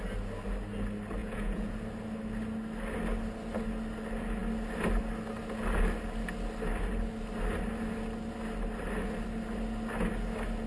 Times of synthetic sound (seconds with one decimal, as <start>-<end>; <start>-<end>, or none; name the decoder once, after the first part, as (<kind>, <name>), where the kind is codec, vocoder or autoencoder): 1.2-1.7 (vocoder, Vocos)